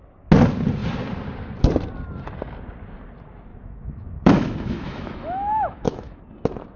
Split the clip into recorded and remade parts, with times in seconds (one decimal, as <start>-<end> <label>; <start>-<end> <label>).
0.0-3.5 recorded; 3.5-6.2 remade; 6.2-6.8 recorded

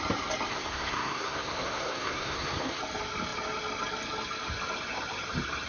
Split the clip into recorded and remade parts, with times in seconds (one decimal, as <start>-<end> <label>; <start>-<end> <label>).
0.0-0.5 recorded; 0.5-2.8 remade; 2.8-5.7 recorded

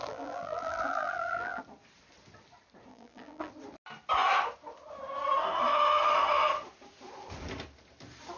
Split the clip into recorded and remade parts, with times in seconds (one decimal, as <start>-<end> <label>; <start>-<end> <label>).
0.0-1.6 remade; 1.6-2.9 recorded; 2.9-3.5 remade; 3.5-8.4 recorded

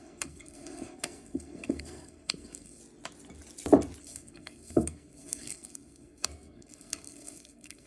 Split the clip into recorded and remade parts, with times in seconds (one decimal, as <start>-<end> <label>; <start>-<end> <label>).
0.0-2.8 remade; 2.8-4.0 recorded; 4.0-7.9 remade